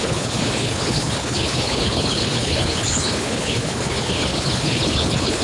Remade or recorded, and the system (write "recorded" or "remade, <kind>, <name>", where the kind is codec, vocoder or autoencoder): remade, codec, HILCodec